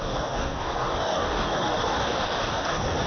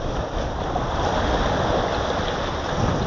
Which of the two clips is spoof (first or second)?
first